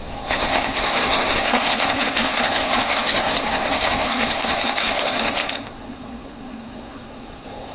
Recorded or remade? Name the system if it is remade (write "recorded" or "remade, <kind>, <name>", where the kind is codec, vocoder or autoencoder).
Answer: remade, codec, SNAC